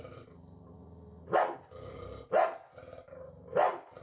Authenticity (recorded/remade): recorded